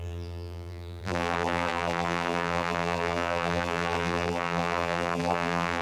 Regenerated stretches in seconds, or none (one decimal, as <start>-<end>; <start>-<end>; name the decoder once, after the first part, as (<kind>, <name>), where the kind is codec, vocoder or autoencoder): 0.0-5.8 (vocoder, BigVGAN v2)